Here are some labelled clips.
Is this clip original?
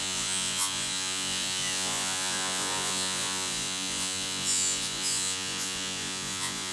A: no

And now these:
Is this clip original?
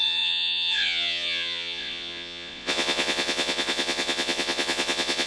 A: no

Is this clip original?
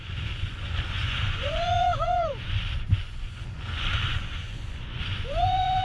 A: no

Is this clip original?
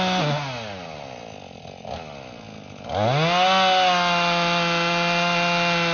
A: yes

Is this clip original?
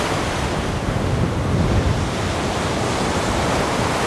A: yes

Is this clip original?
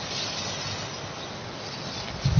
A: yes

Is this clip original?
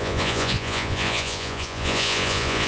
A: no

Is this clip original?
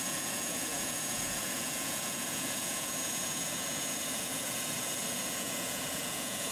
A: no